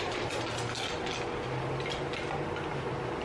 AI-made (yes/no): no